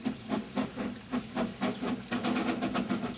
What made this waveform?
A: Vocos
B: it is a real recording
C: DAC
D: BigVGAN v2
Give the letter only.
B